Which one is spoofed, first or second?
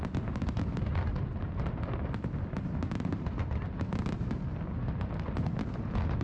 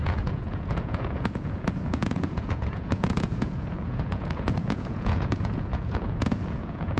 second